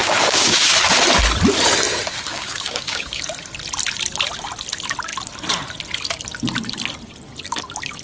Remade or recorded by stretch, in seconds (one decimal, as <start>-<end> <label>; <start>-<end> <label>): 0.0-0.7 remade; 0.7-2.3 recorded; 2.3-3.2 remade; 3.2-8.0 recorded